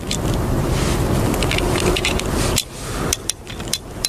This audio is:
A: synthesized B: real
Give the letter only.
B